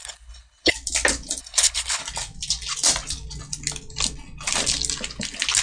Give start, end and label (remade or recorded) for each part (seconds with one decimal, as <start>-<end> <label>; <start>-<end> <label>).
0.0-0.7 remade; 0.7-1.4 recorded; 1.4-2.0 remade; 2.0-5.6 recorded